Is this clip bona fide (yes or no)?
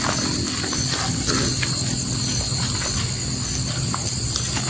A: yes